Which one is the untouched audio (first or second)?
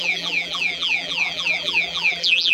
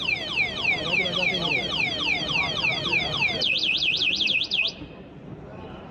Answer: second